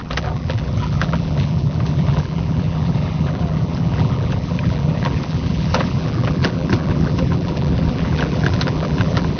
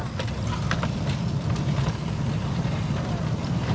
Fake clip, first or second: first